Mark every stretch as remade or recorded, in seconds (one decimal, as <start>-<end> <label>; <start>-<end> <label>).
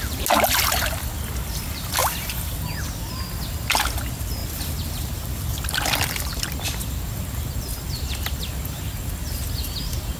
0.0-10.2 recorded